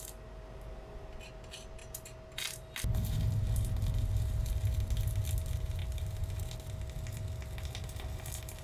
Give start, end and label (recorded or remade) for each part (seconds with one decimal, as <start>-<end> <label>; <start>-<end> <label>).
0.0-5.8 recorded; 5.8-6.4 remade; 6.4-8.6 recorded